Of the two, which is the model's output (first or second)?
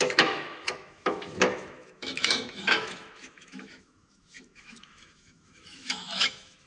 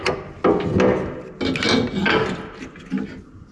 first